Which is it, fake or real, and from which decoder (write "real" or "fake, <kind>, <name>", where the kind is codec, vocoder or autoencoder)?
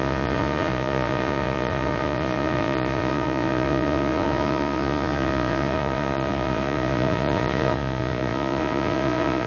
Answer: fake, vocoder, Vocos